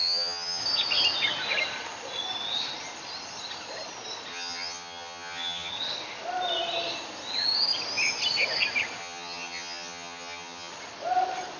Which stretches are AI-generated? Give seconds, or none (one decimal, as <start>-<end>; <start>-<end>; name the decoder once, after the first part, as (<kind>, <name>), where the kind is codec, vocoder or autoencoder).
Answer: 0.0-0.6 (vocoder, HiFi-GAN); 4.3-5.7; 9.0-10.7